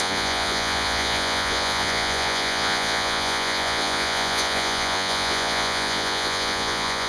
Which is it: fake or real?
fake